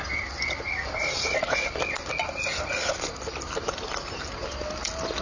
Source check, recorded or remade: recorded